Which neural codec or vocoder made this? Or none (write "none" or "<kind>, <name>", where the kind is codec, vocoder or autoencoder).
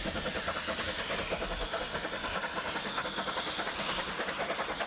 none